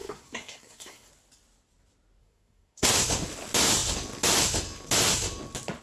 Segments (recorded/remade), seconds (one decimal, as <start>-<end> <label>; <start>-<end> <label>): 0.0-1.1 remade; 1.1-2.2 recorded; 2.2-2.9 remade; 2.9-5.8 recorded